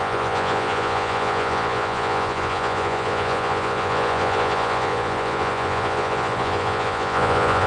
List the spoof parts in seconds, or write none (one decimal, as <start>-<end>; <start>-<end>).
0.0-7.7